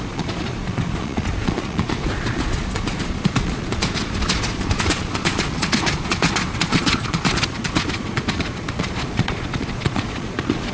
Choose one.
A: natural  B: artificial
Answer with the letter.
B